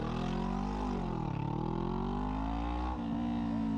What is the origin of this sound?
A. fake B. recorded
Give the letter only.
B